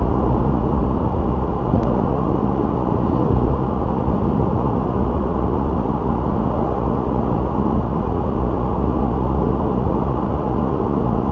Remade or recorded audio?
remade